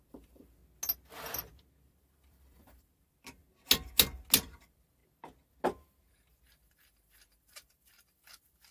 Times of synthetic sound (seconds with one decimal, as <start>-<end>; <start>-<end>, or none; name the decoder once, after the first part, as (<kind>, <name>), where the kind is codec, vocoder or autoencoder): 0.0-0.6 (vocoder, BigVGAN v2); 1.8-3.4; 4.6-5.0; 6.5-8.7

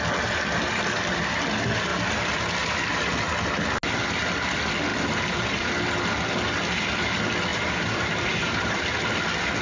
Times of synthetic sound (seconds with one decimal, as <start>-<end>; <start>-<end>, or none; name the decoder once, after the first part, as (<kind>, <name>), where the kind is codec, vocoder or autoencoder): 1.9-2.4 (vocoder, BigVGAN v2); 4.9-5.7; 7.5-8.9